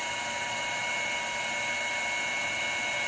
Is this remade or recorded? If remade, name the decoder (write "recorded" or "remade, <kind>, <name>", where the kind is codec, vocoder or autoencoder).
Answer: recorded